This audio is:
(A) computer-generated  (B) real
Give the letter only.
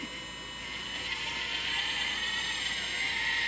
B